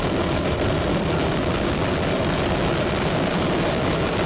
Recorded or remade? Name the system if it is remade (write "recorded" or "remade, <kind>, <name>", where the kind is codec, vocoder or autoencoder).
recorded